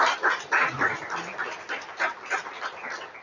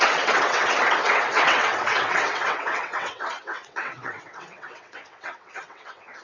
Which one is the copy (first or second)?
second